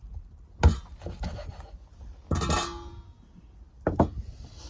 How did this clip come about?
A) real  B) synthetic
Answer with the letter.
A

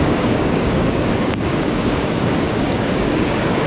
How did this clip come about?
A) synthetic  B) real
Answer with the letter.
A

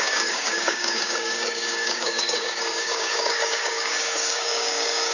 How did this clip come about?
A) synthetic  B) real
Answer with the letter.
A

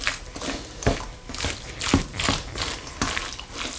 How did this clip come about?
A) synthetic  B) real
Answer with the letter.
B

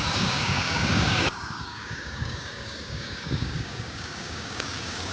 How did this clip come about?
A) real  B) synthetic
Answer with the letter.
B